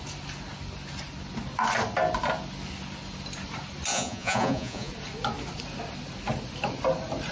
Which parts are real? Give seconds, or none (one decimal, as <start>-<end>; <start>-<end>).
0.0-3.9; 4.9-7.3

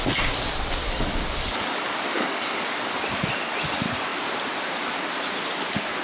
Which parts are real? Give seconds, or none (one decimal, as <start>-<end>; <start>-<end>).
0.0-0.8; 2.9-6.0

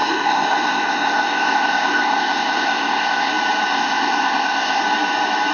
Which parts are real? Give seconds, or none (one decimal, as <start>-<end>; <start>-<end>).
3.3-3.7; 4.8-5.5

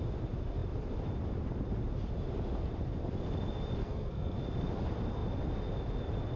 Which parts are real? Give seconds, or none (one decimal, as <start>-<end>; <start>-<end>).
0.0-3.8; 4.4-6.4

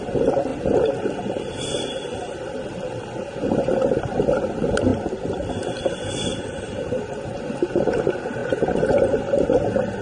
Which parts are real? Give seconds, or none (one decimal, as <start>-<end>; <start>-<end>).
0.0-6.3; 7.3-8.4; 9.2-10.0

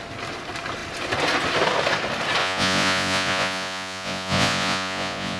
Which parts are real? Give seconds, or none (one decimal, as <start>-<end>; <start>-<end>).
0.0-2.4

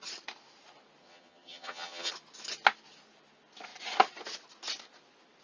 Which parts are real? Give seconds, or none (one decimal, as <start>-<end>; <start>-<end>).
0.0-1.0; 2.1-5.4